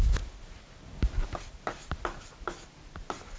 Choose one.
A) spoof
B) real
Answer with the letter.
B